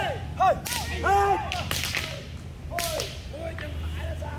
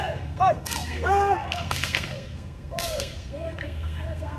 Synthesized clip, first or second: second